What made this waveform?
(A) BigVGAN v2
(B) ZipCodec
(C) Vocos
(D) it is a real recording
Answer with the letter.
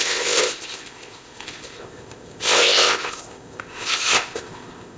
B